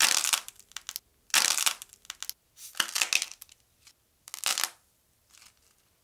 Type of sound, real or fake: real